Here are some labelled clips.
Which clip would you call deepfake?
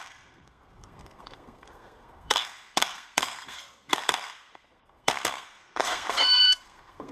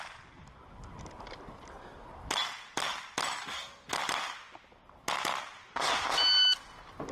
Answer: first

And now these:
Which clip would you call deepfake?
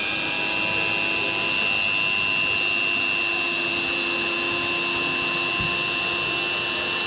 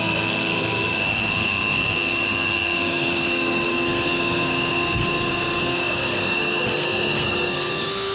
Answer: second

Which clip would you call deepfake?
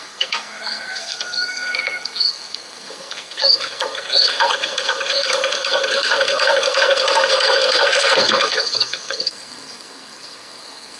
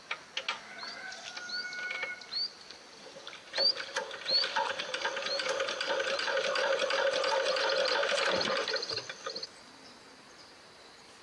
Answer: first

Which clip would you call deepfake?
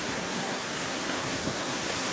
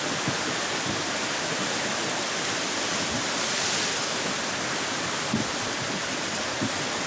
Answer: first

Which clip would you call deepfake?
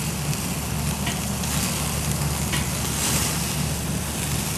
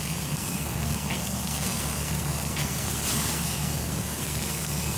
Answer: second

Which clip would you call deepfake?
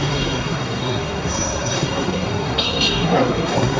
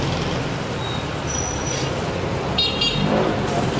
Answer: first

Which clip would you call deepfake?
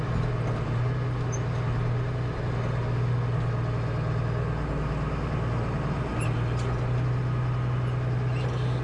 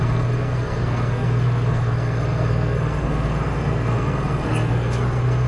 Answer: second